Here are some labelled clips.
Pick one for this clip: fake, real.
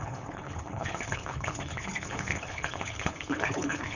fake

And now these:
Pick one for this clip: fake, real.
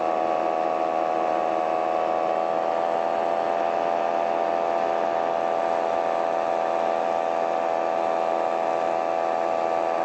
real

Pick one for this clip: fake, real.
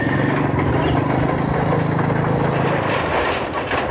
real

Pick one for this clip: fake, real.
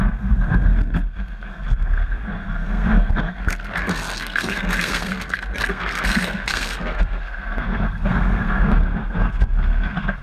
fake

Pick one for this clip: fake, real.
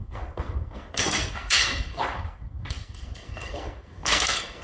fake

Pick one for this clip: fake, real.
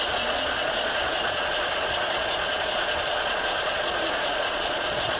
fake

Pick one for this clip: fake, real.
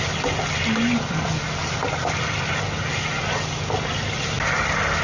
real